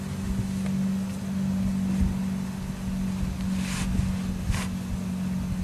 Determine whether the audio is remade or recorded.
recorded